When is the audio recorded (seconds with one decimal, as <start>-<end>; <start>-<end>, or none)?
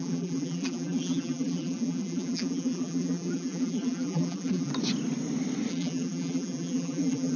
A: 4.7-5.7